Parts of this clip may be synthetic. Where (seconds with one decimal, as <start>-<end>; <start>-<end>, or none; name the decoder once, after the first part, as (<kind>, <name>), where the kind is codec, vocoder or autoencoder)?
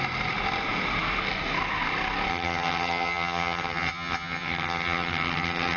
2.3-5.8 (vocoder, HiFi-GAN)